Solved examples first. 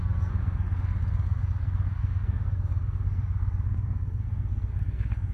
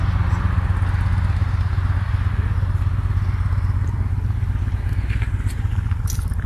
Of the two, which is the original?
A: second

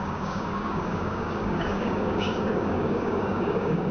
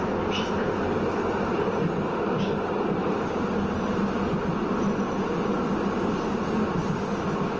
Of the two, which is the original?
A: second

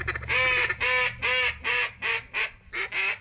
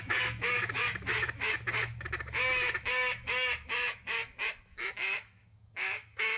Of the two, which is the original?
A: first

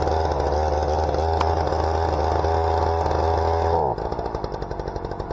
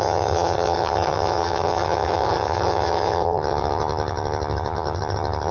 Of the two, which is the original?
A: first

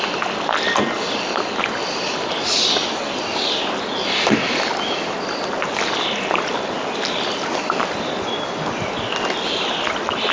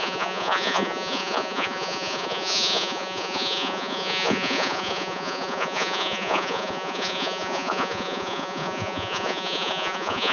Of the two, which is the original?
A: first